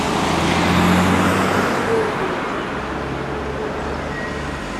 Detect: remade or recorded recorded